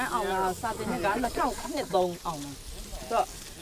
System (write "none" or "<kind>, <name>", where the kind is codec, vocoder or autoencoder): none